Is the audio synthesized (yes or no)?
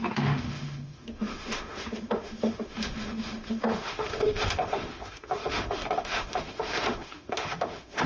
yes